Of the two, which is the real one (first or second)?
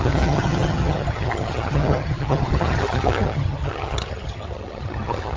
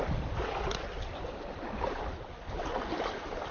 second